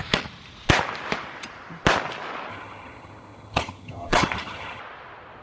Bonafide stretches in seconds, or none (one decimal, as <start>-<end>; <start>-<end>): 0.0-2.5; 4.8-5.4